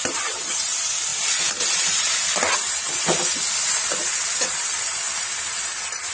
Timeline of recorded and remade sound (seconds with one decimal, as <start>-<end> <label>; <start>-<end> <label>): 0.0-6.1 recorded